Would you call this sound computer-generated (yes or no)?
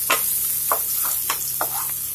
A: no